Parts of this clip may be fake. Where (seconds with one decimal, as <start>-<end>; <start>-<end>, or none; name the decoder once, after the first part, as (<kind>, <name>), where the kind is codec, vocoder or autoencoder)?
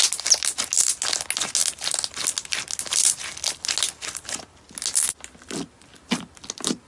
none